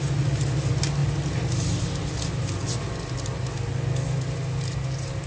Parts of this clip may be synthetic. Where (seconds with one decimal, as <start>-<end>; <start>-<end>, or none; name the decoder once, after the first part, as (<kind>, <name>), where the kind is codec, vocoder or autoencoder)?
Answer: none